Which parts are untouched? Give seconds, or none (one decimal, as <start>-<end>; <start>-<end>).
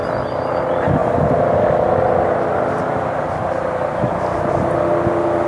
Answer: 0.0-5.5